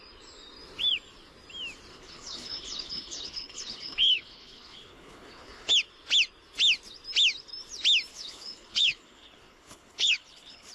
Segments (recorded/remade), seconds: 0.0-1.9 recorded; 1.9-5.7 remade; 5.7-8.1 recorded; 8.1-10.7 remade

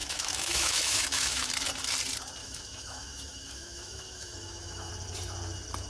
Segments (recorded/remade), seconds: 0.0-1.5 remade; 1.5-2.4 recorded; 2.4-4.9 remade; 4.9-5.9 recorded

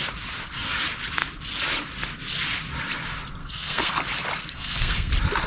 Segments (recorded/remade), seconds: 0.0-3.4 recorded; 3.4-3.9 remade; 3.9-4.5 recorded; 4.5-5.1 remade; 5.1-5.5 recorded

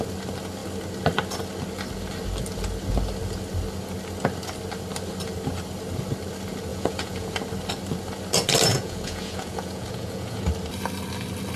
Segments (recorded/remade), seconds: 0.0-6.7 recorded; 6.7-7.3 remade; 7.3-8.7 recorded; 8.7-10.4 remade; 10.4-11.6 recorded

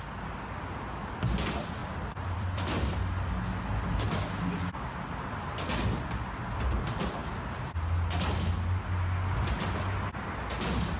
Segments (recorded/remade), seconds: 0.0-1.8 recorded; 1.8-3.3 remade; 3.3-11.0 recorded

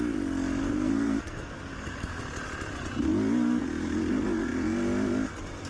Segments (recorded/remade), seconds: 0.0-0.6 recorded; 0.6-2.2 remade; 2.2-5.7 recorded

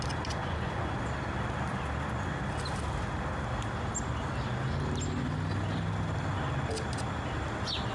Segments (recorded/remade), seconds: 0.0-0.4 recorded; 0.4-1.0 remade; 1.0-7.9 recorded